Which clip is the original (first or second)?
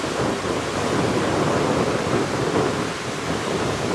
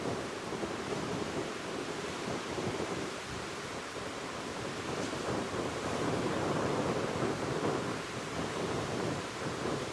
first